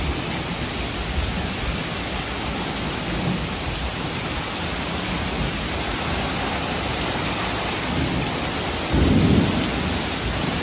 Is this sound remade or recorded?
recorded